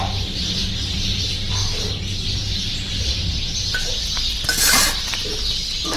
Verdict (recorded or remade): recorded